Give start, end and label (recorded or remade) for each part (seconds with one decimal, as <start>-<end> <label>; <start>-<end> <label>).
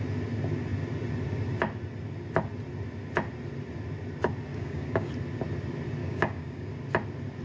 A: 0.0-4.5 recorded; 4.5-5.1 remade; 5.1-6.0 recorded; 6.0-6.7 remade; 6.7-7.4 recorded